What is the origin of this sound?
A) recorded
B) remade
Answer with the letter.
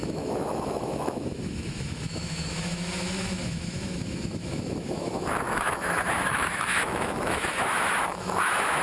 B